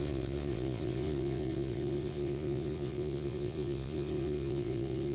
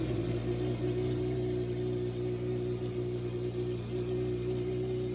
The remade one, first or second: first